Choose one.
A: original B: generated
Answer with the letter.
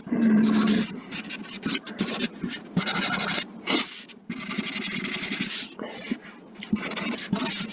A